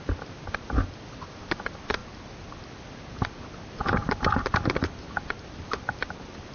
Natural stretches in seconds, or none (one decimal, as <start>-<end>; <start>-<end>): 0.0-6.5